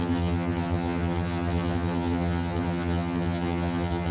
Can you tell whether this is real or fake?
fake